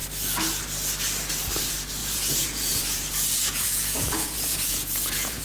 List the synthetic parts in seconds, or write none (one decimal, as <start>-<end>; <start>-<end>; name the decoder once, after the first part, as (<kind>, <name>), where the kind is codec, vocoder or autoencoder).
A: 2.0-5.4 (vocoder, Vocos)